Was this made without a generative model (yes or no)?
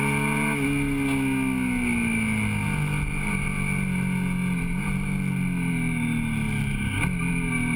yes